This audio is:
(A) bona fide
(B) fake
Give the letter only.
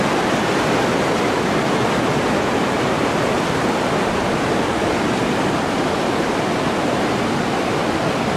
A